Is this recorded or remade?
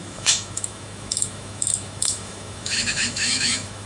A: remade